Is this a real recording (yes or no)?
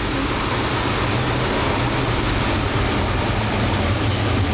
yes